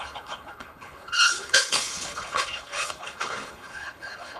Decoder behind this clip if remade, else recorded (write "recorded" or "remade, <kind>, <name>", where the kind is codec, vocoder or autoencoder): remade, codec, HILCodec